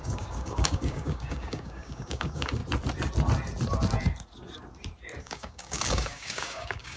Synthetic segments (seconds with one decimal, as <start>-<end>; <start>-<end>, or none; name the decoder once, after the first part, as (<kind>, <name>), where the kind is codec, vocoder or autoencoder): 0.0-2.6 (codec, DAC); 5.2-7.0